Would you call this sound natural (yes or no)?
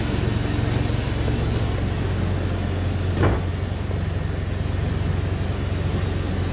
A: yes